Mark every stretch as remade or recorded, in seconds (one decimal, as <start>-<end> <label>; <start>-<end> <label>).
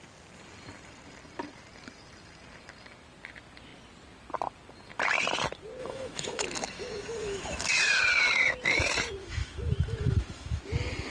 0.0-5.8 recorded; 5.8-7.7 remade; 7.7-9.2 recorded; 9.2-10.6 remade; 10.6-11.1 recorded